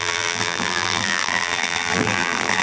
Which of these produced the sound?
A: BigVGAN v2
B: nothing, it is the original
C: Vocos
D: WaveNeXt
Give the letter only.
A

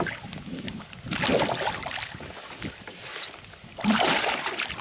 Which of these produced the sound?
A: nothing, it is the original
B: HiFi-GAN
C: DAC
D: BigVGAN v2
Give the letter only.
D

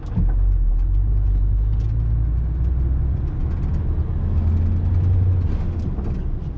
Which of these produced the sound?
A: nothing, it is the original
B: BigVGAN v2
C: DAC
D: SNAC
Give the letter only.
A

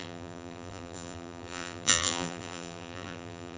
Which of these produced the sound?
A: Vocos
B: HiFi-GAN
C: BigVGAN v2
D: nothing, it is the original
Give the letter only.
C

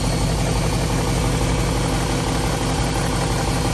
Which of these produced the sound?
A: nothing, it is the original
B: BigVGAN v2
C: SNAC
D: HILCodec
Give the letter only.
A